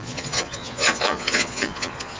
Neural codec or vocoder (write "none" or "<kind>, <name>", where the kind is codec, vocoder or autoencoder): vocoder, Vocos